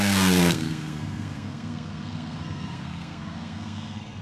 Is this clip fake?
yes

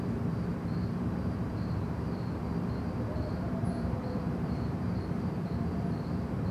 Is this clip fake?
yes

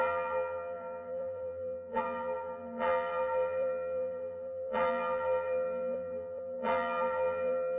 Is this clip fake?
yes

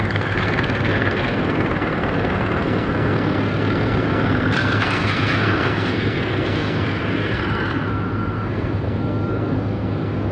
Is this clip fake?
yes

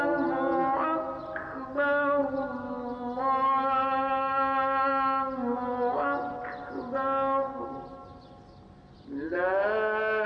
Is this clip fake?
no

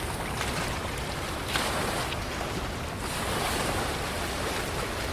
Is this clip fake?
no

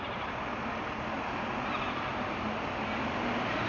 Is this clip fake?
no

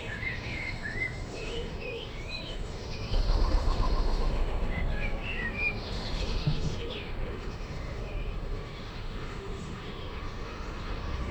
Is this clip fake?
yes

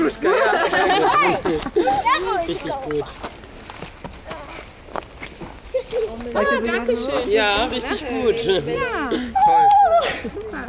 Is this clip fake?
no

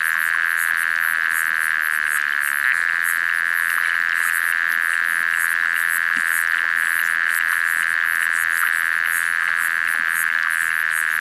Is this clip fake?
no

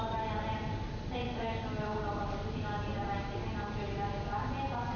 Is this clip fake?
no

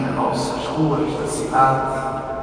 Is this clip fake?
no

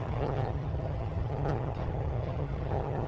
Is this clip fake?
yes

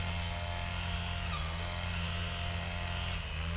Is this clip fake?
no